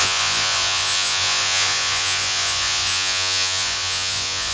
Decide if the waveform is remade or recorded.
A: remade